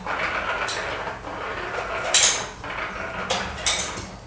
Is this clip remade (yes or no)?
no